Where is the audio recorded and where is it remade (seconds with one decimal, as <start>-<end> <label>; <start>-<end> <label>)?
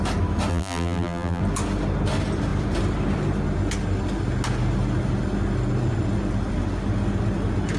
0.0-0.5 recorded; 0.5-1.4 remade; 1.4-7.8 recorded